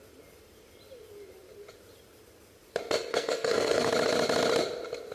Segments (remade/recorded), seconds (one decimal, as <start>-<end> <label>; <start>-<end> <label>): 0.0-3.1 recorded; 3.1-3.9 remade; 3.9-5.1 recorded